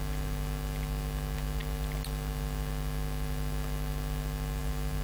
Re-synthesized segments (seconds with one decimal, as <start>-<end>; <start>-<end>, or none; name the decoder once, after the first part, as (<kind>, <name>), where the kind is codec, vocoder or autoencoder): none